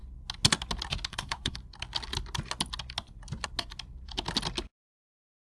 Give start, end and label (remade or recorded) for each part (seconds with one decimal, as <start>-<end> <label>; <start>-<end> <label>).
0.0-1.1 recorded; 1.1-1.6 remade; 1.6-4.8 recorded; 4.8-5.4 remade